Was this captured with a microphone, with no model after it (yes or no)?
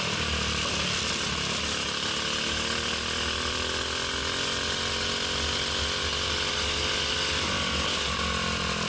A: yes